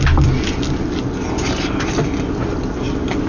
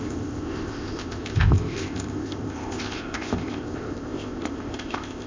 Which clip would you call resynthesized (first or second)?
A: second